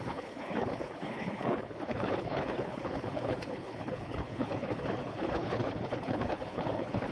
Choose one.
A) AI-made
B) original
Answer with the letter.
A